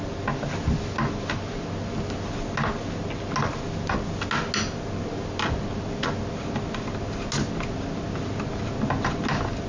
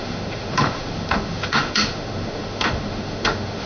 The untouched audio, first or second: first